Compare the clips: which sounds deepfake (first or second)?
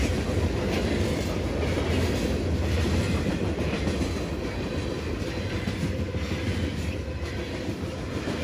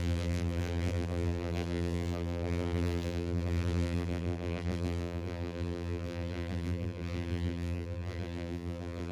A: second